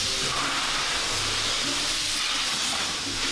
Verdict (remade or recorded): recorded